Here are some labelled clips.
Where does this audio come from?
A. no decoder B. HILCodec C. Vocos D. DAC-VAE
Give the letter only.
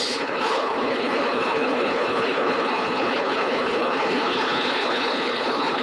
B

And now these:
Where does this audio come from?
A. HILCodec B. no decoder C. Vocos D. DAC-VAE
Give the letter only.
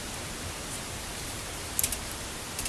B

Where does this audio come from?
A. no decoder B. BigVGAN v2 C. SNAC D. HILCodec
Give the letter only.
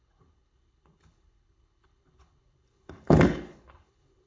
D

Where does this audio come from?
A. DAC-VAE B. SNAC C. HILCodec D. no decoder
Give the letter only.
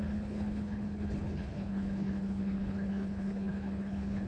C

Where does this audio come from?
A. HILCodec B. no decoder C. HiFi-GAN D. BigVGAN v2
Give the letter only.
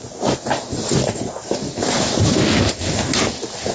B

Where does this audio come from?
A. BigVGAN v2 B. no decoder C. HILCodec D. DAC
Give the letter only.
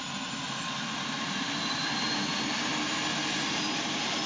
B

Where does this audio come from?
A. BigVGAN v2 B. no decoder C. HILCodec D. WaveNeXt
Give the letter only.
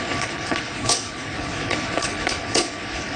C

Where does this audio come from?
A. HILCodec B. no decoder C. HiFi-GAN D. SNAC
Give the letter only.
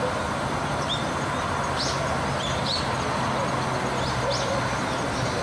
B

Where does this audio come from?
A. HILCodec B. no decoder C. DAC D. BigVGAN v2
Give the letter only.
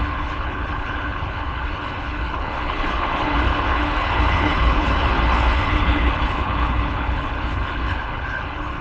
A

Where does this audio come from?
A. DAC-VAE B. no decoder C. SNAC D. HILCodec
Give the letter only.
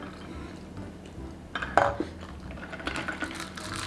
B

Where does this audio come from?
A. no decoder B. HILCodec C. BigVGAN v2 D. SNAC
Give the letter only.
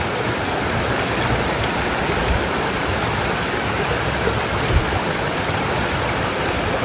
A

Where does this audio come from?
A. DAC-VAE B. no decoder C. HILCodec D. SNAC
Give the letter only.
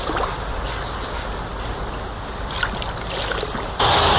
B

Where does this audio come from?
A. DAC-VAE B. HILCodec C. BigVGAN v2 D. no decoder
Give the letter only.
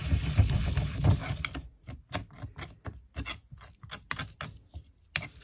D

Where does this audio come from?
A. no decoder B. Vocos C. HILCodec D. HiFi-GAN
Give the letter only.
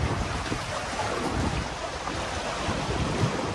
A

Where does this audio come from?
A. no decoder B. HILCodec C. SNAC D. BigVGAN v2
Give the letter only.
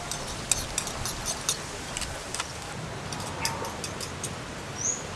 A